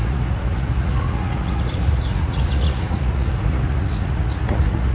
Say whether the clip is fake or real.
fake